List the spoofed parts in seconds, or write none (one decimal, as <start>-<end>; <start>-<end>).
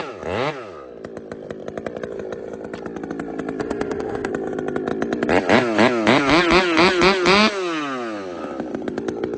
3.6-4.3